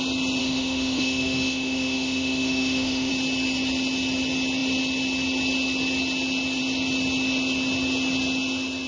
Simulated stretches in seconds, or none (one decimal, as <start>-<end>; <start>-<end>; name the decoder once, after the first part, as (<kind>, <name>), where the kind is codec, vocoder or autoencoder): 0.4-3.1 (autoencoder, DAC-VAE)